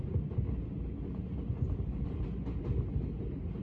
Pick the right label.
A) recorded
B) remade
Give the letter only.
A